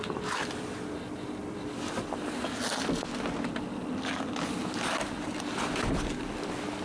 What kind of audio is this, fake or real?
real